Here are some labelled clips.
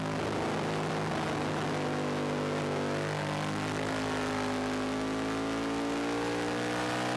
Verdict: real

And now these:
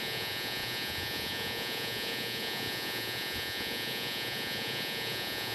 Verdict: fake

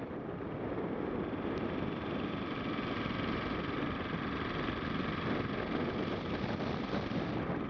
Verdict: real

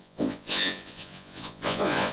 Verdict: fake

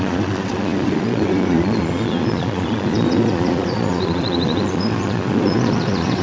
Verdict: fake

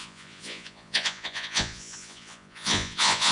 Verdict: fake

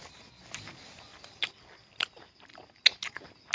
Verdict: real